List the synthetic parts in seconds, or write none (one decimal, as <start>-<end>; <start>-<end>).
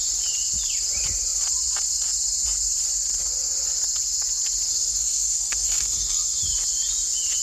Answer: 4.7-6.4